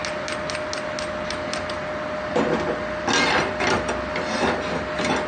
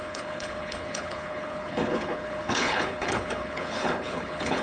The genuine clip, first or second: first